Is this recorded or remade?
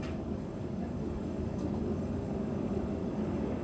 remade